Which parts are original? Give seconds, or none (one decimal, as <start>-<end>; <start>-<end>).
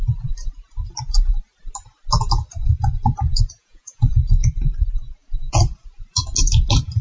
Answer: 0.0-3.6; 4.1-7.0